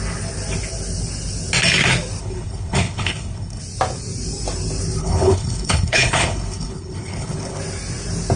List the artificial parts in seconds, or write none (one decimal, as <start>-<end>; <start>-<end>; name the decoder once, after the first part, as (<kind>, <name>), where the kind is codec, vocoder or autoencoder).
2.2-3.6 (codec, HILCodec); 5.0-7.6